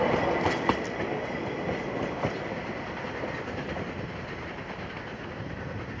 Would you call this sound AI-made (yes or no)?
no